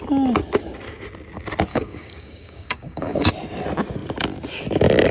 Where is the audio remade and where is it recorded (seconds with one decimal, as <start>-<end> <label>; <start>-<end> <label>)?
0.0-1.7 recorded; 1.7-3.3 remade; 3.3-5.1 recorded